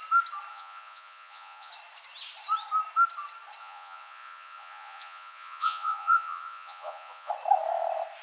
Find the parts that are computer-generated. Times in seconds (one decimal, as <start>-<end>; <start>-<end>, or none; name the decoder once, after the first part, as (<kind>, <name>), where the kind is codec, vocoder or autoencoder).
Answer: 0.5-1.7 (vocoder, Vocos); 3.6-7.3